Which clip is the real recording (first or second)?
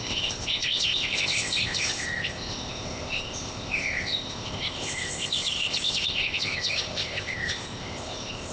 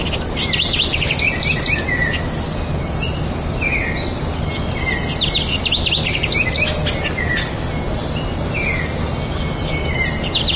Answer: second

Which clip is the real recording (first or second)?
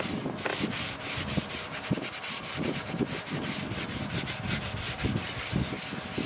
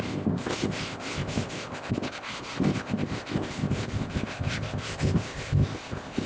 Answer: first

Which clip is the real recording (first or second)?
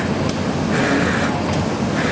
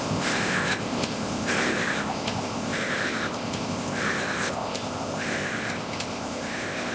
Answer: first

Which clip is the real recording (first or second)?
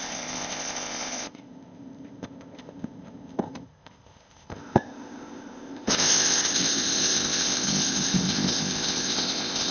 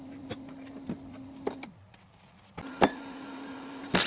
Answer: second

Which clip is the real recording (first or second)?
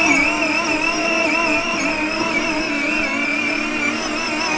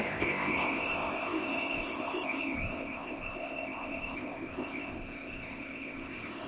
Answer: first